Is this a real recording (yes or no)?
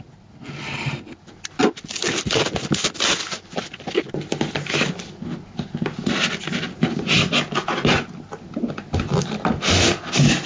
yes